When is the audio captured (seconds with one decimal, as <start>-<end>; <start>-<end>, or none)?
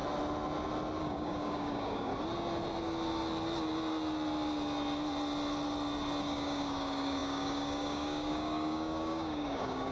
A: 0.0-1.0; 2.1-6.2